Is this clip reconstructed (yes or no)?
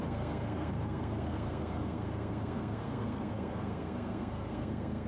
yes